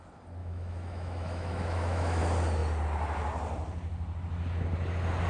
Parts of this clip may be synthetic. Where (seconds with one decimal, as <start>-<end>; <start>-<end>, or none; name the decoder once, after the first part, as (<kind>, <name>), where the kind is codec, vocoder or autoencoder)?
0.4-2.2 (autoencoder, DAC-VAE)